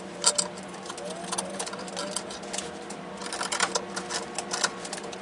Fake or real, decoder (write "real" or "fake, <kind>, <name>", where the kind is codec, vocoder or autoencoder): real